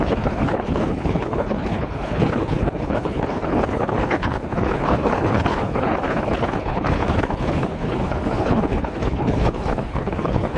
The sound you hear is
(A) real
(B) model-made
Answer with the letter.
B